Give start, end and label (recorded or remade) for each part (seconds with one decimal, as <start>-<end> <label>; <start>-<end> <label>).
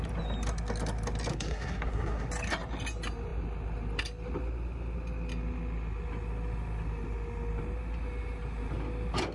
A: 0.0-1.3 recorded; 1.3-2.3 remade; 2.3-9.3 recorded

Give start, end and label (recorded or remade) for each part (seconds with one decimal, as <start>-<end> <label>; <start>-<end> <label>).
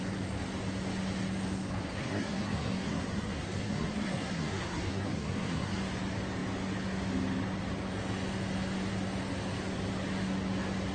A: 0.0-2.0 recorded; 2.0-5.8 remade; 5.8-10.9 recorded